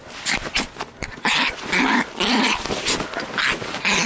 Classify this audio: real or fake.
real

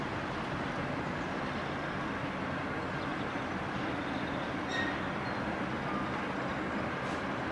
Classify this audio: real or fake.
real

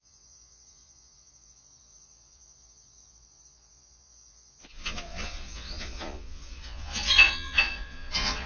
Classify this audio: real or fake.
fake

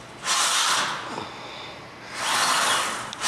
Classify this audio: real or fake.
real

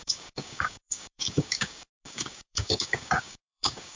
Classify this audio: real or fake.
fake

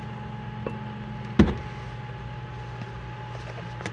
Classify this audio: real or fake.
real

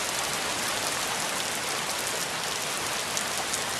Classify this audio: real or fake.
real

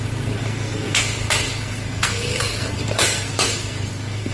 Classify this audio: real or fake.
fake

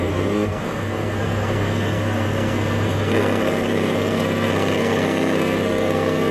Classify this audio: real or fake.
fake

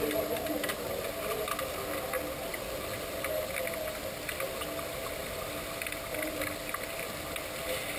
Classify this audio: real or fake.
real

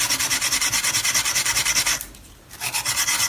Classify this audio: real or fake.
real